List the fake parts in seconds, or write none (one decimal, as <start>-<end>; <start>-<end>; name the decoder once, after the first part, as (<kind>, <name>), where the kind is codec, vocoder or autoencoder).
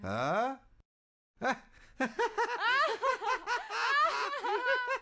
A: 0.0-1.9 (vocoder, BigVGAN v2)